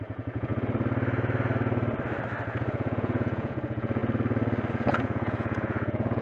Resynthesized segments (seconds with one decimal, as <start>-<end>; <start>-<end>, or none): 0.0-0.5; 2.6-4.0; 4.7-6.2